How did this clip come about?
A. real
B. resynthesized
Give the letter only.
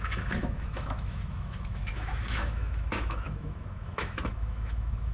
B